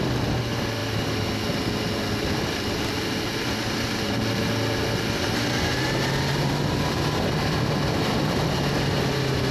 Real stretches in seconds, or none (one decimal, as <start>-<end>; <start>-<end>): 0.0-9.5